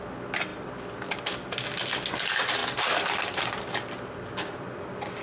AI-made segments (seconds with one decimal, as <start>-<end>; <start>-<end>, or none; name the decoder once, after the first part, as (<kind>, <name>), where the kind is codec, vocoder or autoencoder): none

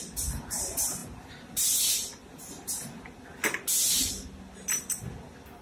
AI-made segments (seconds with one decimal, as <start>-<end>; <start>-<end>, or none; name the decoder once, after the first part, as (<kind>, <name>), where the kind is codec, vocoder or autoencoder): none

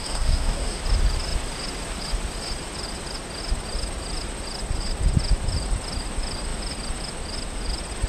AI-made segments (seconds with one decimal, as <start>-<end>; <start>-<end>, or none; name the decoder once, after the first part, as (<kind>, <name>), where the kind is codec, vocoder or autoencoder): 0.0-0.8 (codec, DAC)

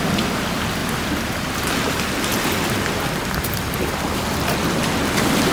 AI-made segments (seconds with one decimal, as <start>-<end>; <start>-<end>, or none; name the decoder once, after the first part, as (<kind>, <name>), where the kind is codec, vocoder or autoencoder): none